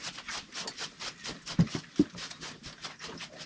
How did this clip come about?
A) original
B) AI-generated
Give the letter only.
B